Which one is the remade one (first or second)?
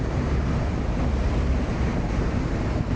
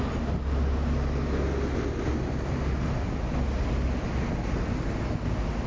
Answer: first